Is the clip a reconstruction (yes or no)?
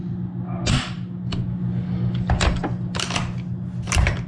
no